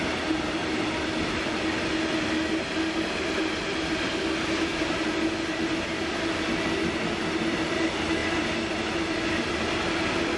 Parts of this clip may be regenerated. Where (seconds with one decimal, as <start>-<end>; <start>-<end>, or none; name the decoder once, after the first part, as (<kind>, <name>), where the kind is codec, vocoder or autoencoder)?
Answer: none